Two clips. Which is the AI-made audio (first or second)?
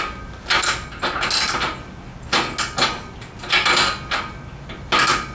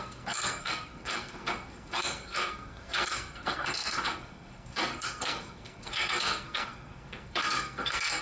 second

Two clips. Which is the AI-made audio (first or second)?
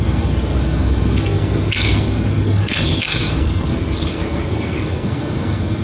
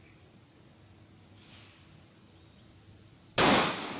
first